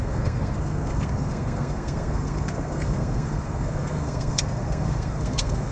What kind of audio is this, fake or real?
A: fake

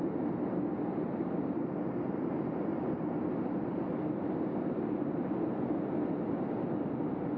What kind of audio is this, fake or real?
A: real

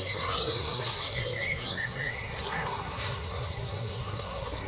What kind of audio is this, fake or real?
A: fake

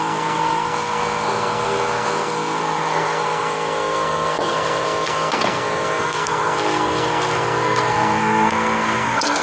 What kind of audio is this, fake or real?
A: fake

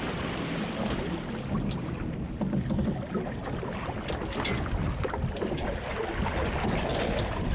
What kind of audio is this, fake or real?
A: real